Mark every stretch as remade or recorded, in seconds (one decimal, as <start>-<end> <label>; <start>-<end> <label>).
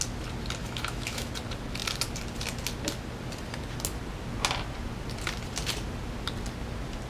0.0-0.6 recorded; 0.6-1.3 remade; 1.3-7.1 recorded